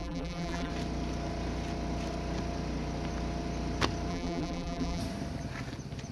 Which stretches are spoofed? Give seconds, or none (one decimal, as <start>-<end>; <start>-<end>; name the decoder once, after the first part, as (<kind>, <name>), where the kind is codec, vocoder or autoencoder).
0.0-0.7 (vocoder, BigVGAN v2); 4.1-5.0